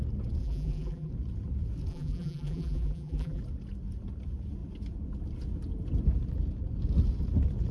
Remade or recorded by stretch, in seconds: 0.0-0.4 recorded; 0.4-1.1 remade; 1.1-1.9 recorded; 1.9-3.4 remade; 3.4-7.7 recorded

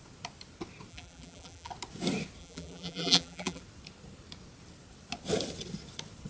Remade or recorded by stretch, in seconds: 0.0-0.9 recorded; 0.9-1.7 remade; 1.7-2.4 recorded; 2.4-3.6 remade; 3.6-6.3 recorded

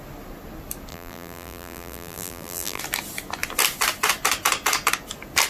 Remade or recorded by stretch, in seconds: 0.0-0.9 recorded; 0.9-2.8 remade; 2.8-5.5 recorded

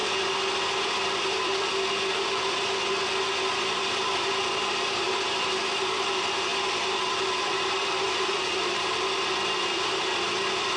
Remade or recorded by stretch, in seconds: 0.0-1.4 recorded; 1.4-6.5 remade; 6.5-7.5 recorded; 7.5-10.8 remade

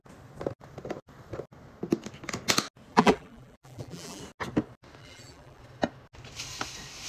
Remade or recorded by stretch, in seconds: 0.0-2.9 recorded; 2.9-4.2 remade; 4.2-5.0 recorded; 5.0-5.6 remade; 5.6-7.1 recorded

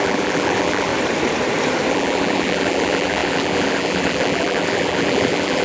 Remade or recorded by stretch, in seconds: 0.0-0.9 remade; 0.9-1.9 recorded; 1.9-5.6 remade

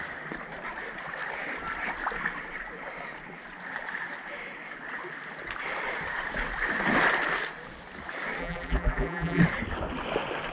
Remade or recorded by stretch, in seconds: 0.0-8.4 recorded; 8.4-9.4 remade; 9.4-10.5 recorded